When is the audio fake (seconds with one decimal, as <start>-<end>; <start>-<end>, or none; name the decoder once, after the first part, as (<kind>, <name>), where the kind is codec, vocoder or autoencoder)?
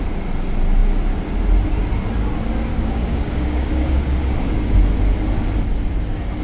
2.7-4.7 (codec, DAC)